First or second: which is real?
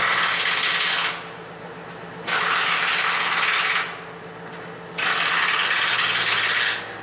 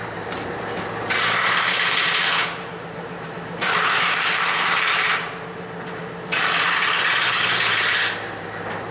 first